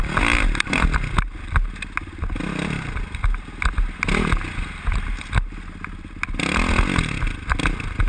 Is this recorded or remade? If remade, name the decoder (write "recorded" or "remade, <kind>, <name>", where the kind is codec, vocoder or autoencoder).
recorded